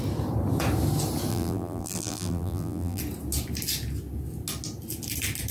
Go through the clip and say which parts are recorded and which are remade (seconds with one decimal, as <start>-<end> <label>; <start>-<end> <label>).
0.0-1.3 recorded; 1.3-3.0 remade; 3.0-5.5 recorded